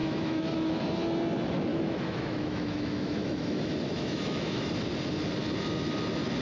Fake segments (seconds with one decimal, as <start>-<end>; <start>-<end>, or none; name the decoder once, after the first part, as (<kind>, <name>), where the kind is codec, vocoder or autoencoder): 0.0-0.8 (autoencoder, DAC-VAE); 1.7-4.7